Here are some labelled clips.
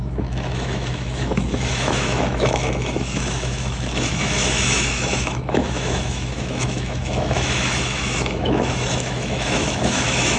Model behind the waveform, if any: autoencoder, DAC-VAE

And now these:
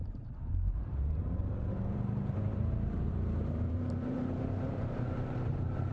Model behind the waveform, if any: vocoder, BigVGAN v2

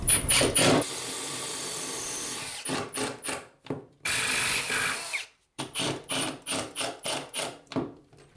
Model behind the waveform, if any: vocoder, BigVGAN v2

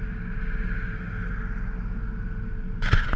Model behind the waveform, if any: none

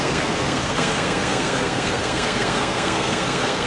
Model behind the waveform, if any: codec, SNAC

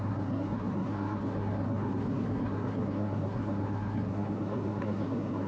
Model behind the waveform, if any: codec, SNAC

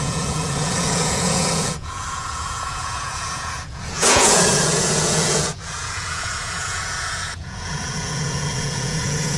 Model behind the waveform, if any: vocoder, Vocos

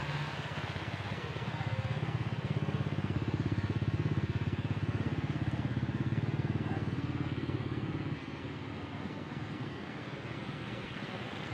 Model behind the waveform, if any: codec, SNAC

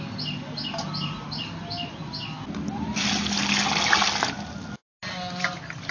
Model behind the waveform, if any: none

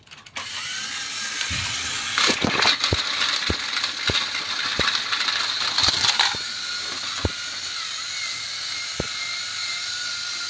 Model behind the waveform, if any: none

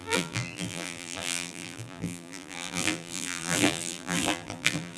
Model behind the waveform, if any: vocoder, BigVGAN v2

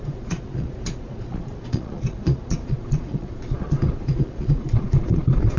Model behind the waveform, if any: vocoder, Vocos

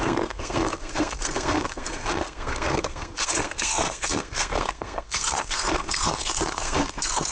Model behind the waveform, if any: codec, SNAC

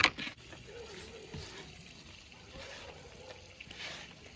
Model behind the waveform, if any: none